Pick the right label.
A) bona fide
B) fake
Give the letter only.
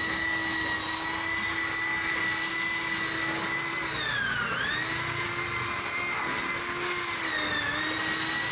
A